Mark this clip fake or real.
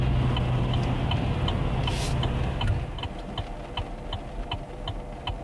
real